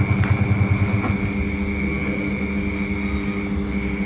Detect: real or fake real